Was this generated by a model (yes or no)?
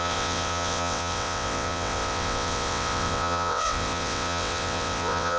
yes